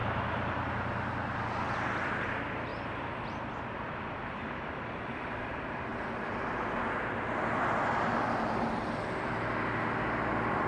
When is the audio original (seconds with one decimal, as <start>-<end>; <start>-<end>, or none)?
0.7-2.7; 4.8-5.9; 6.4-10.7

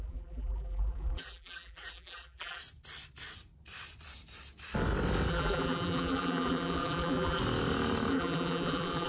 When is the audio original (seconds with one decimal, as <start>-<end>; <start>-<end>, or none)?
2.6-5.3; 7.4-8.1

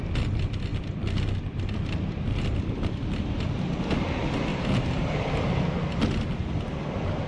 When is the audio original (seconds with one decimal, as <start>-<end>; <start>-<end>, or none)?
0.0-4.5; 5.1-7.3

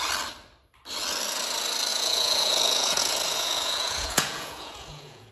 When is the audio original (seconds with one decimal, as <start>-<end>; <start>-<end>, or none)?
0.0-1.9

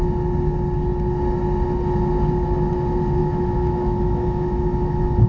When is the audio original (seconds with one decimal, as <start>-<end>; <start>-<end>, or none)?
0.0-3.2